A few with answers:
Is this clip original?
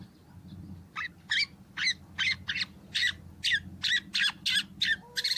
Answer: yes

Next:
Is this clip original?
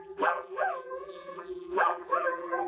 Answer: no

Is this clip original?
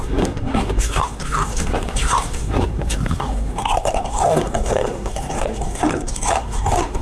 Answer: no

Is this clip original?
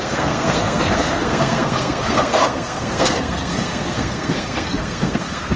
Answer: no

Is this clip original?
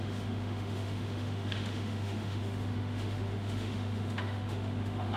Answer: no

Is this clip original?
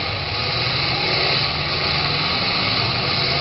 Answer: yes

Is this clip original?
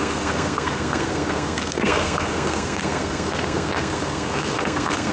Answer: no